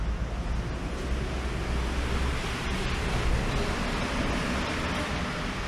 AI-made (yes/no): no